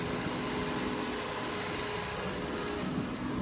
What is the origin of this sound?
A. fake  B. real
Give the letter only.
B